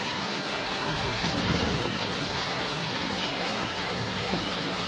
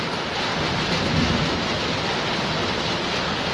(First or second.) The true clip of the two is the second